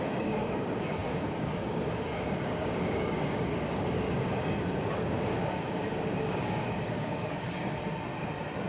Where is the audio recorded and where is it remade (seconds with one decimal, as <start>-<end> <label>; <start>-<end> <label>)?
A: 0.0-7.8 remade; 7.8-8.7 recorded